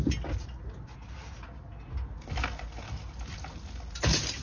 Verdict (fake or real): real